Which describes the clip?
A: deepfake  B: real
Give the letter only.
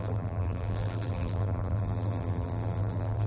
A